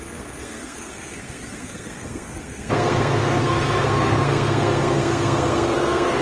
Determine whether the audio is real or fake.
fake